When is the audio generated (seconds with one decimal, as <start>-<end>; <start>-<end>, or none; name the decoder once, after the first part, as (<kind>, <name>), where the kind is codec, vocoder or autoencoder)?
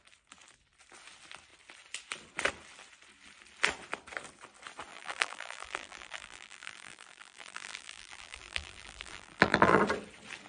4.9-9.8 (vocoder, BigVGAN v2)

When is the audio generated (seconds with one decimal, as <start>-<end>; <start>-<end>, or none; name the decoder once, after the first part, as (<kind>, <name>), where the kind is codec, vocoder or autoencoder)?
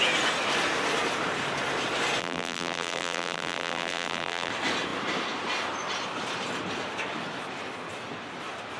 2.2-4.5 (vocoder, BigVGAN v2)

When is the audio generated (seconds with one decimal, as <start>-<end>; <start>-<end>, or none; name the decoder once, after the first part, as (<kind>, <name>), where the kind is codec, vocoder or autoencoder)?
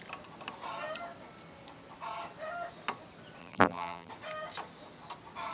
3.4-4.1 (vocoder, BigVGAN v2)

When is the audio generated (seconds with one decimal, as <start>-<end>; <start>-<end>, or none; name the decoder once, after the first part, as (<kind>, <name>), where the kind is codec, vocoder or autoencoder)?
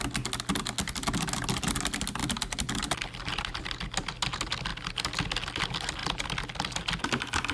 2.2-3.6 (vocoder, BigVGAN v2); 6.0-7.0